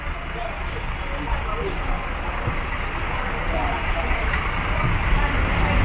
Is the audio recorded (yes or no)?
yes